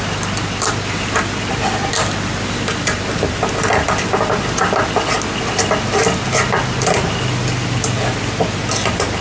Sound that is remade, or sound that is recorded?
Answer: recorded